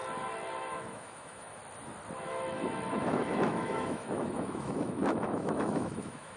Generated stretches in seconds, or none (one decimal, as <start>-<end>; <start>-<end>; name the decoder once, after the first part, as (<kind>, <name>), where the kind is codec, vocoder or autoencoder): 0.7-1.6 (autoencoder, DAC-VAE); 2.9-6.4